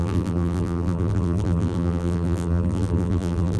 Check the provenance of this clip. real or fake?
fake